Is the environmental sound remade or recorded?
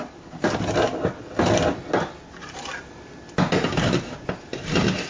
recorded